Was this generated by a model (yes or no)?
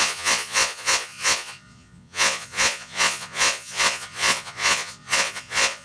yes